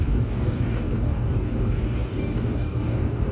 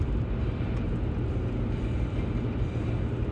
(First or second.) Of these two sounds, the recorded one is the second